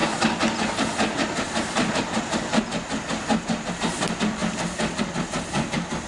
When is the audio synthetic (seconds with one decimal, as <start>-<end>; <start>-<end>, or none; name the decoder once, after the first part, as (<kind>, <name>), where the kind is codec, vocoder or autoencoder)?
none